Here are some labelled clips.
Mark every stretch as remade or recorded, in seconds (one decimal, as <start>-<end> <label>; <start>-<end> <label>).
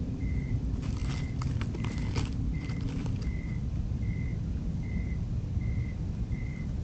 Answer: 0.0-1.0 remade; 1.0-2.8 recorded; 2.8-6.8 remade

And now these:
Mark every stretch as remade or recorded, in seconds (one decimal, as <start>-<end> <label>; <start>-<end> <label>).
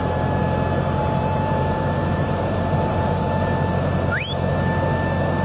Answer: 0.0-1.0 recorded; 1.0-3.5 remade; 3.5-5.4 recorded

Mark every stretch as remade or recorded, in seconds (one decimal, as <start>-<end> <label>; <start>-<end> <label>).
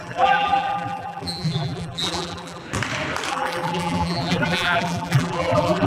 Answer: 0.0-2.6 remade; 2.6-3.3 recorded; 3.3-5.9 remade